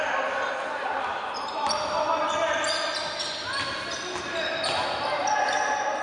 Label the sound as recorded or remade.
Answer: recorded